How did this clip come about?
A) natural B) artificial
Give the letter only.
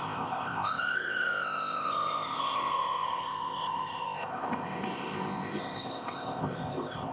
B